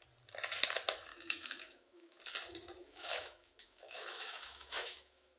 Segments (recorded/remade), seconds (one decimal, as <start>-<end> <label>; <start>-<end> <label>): 0.0-1.1 recorded; 1.1-2.2 remade; 2.2-2.8 recorded; 2.8-5.4 remade